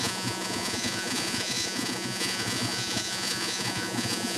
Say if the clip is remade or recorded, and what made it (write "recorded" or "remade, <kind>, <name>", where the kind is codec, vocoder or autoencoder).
remade, vocoder, Vocos